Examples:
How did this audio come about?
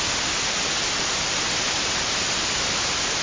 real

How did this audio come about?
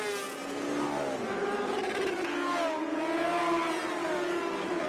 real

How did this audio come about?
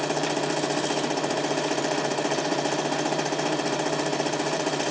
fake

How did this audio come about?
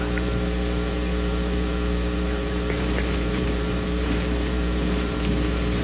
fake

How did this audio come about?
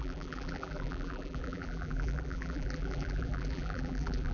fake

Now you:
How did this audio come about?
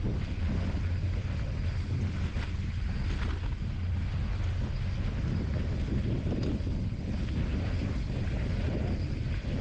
real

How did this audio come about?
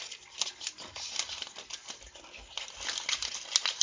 real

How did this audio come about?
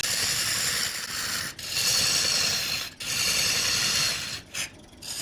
real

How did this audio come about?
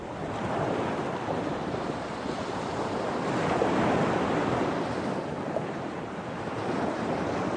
fake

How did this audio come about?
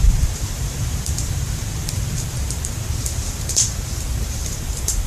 fake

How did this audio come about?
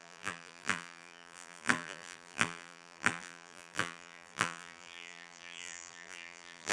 fake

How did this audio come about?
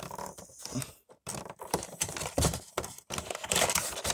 real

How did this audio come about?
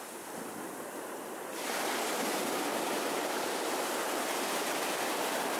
fake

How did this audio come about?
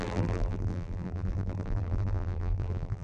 fake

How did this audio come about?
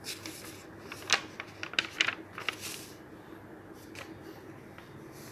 real